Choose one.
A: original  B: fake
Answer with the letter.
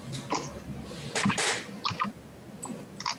B